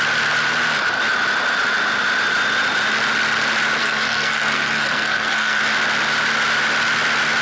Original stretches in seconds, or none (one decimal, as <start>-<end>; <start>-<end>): 0.0-3.8; 5.6-7.4

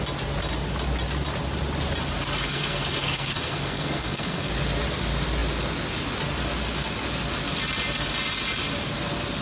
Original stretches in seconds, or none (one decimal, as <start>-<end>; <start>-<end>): 0.0-2.4; 4.5-9.4

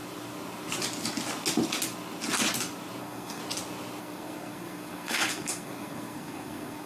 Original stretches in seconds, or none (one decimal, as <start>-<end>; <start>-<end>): 0.0-3.0; 3.4-4.0

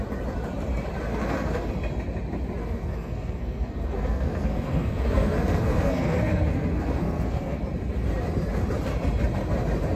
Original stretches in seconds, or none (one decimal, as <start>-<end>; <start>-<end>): 0.0-1.1; 1.7-2.6; 7.6-10.0

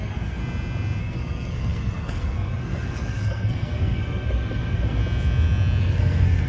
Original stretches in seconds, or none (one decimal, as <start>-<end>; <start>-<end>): 0.4-1.0; 5.0-5.8

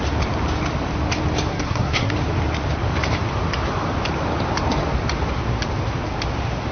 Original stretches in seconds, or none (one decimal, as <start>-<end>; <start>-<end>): 0.0-1.5; 2.1-6.7